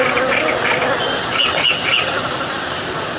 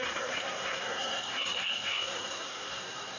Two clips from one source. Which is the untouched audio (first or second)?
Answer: first